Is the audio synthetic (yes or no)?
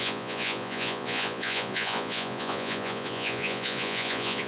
yes